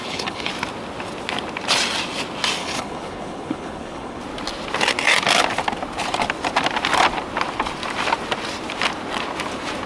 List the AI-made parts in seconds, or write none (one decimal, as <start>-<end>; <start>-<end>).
0.0-0.5; 2.6-4.2